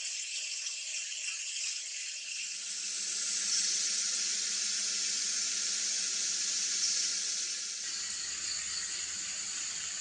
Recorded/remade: recorded